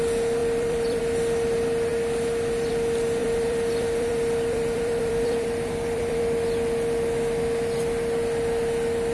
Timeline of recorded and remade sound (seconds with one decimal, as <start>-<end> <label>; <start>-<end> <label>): 0.0-0.4 recorded; 0.4-1.0 remade; 1.0-3.2 recorded; 3.2-6.2 remade; 6.2-9.1 recorded